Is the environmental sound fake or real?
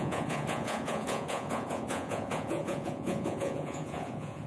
fake